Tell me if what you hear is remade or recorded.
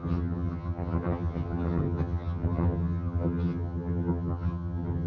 remade